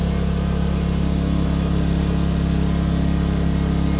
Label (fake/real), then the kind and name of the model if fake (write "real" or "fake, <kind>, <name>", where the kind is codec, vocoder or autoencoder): real